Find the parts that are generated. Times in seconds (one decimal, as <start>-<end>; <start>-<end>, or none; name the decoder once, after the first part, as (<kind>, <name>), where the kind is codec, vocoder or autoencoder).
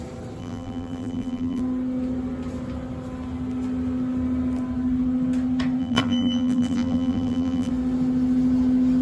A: 0.4-1.6 (vocoder, BigVGAN v2); 5.8-7.7